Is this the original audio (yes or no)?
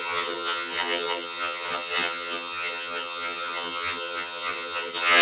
no